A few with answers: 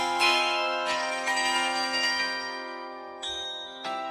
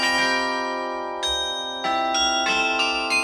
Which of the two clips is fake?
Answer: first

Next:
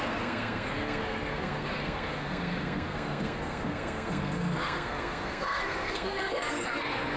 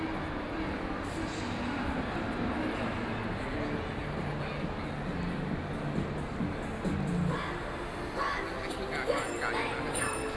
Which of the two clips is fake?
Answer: first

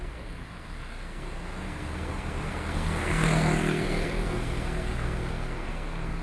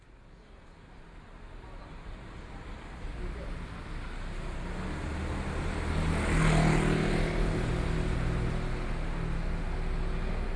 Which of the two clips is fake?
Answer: first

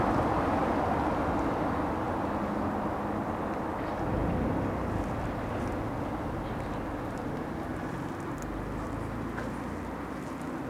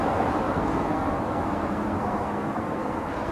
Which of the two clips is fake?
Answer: second